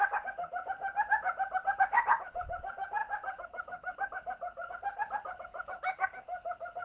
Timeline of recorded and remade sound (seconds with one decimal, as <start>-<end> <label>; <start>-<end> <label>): 0.0-6.8 recorded